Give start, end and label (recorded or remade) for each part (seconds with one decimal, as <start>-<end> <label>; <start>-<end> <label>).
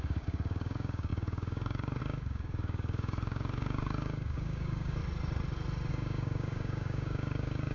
0.0-5.0 remade; 5.0-5.9 recorded; 5.9-7.7 remade